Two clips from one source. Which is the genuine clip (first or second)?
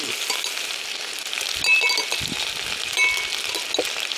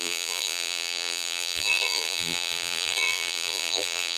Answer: first